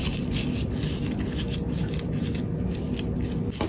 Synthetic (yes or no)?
no